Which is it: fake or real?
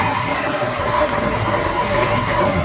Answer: fake